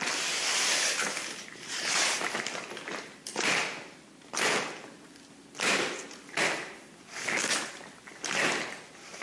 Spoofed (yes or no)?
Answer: no